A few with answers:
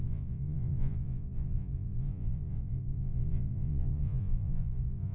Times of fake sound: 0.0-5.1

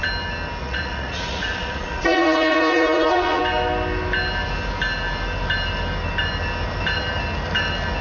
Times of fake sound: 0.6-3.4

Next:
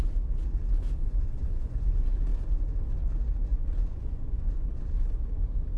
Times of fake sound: 1.0-1.9; 3.5-4.7

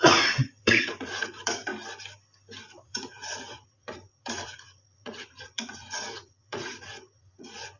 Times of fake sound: 0.0-1.7; 2.7-7.8

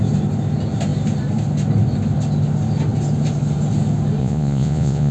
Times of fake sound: 4.2-5.1

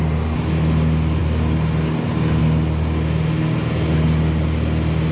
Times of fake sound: none

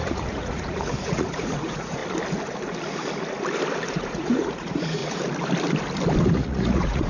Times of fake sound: 0.0-2.0; 3.9-5.0; 6.2-7.1

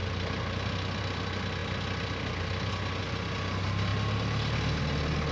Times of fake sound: none